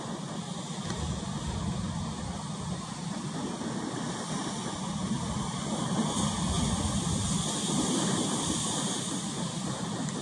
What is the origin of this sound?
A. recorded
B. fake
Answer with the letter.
A